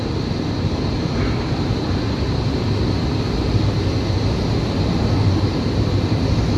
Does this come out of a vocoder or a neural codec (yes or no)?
no